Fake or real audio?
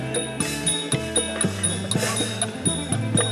real